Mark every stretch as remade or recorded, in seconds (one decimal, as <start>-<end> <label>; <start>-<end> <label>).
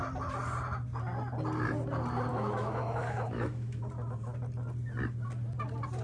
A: 0.0-2.3 recorded; 2.3-3.8 remade; 3.8-6.0 recorded